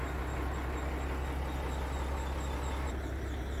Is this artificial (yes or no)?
no